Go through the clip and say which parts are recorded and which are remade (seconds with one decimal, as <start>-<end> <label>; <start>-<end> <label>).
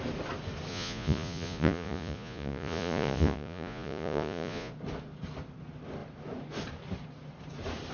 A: 0.0-0.7 recorded; 0.7-4.7 remade; 4.7-7.9 recorded